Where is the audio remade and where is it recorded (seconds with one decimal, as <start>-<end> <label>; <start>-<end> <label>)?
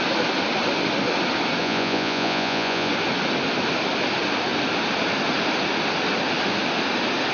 0.0-1.6 recorded; 1.6-2.9 remade; 2.9-7.3 recorded